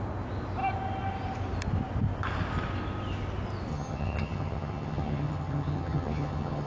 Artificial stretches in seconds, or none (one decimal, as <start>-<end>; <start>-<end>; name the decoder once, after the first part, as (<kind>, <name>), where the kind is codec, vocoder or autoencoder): 3.7-6.7 (vocoder, HiFi-GAN)